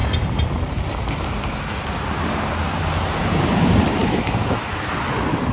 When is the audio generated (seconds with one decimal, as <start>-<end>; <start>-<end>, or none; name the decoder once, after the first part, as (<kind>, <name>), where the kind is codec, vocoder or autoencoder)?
4.0-4.7 (autoencoder, DAC-VAE)